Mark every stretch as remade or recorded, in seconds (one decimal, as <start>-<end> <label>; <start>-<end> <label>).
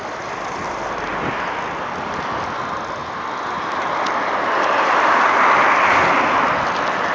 0.0-7.1 recorded